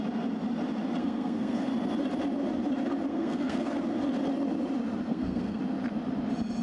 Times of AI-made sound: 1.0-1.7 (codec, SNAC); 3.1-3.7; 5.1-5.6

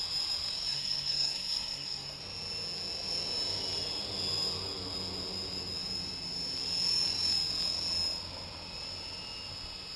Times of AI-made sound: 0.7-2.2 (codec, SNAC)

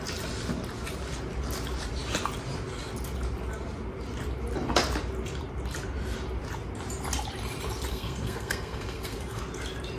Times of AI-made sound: 7.9-9.4 (codec, SNAC)

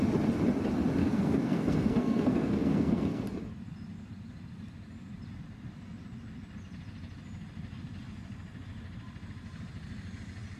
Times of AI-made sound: 1.0-3.2 (codec, SNAC)